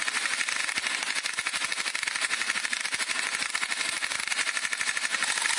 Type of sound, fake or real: real